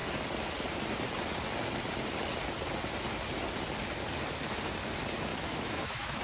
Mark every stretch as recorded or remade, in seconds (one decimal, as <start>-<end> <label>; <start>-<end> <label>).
0.0-5.3 recorded; 5.3-6.2 remade